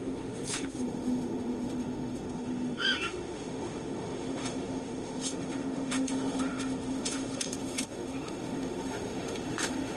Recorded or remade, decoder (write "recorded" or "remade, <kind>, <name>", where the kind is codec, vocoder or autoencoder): remade, autoencoder, DAC-VAE